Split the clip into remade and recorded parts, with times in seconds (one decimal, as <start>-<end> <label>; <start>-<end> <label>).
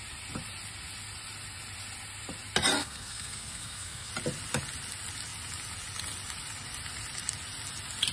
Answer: 0.0-2.8 recorded; 2.8-4.1 remade; 4.1-8.1 recorded